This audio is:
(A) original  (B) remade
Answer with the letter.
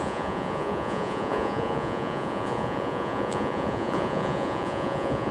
B